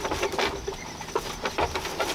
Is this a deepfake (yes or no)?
no